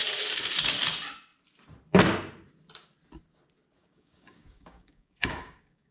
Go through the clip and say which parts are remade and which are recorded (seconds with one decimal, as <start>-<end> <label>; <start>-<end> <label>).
0.0-3.8 recorded; 3.8-5.9 remade